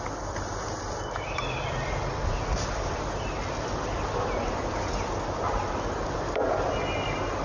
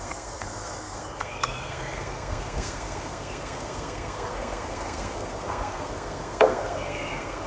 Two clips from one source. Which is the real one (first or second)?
first